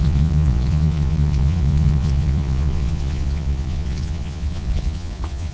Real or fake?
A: fake